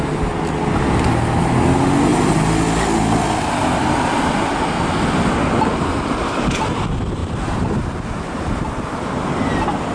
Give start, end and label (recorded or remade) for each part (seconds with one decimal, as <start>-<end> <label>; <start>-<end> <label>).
0.0-7.2 recorded; 7.2-8.7 remade; 8.7-9.9 recorded